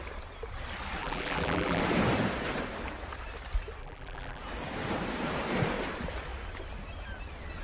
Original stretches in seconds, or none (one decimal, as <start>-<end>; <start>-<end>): 0.0-1.0; 1.8-3.8; 4.4-7.6